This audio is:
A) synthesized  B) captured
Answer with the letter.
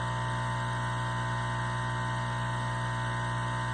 B